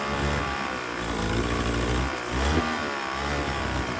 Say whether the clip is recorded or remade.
recorded